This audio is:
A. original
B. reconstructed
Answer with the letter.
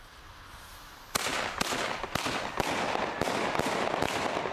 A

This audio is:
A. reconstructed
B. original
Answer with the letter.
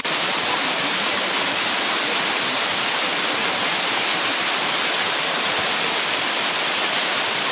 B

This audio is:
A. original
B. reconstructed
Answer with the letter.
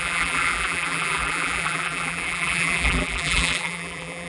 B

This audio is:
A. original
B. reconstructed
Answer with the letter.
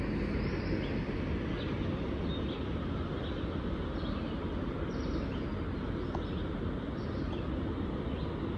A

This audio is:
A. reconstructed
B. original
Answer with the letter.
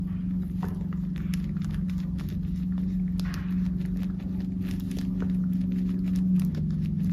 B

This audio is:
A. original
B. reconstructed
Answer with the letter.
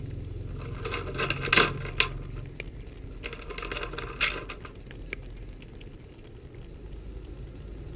A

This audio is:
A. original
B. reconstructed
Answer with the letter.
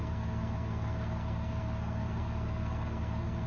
B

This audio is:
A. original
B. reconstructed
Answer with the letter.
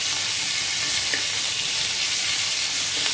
A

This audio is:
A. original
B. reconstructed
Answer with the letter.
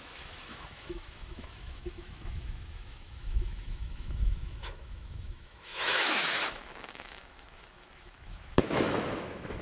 B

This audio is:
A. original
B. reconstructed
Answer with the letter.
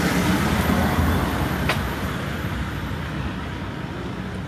A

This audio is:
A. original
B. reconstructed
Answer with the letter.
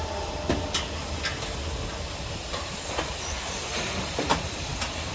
A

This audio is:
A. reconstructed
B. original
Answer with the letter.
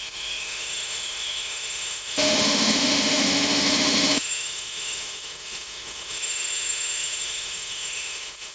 A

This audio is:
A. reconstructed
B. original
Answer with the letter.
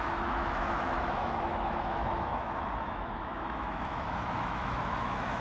A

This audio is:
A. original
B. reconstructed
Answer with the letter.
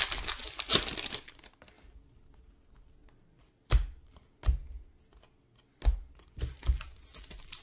A